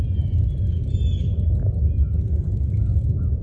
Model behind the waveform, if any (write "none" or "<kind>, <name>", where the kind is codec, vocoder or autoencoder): none